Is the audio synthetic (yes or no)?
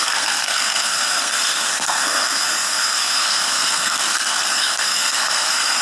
yes